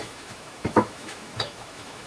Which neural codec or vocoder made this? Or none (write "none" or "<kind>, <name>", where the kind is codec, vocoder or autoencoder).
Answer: autoencoder, DAC-VAE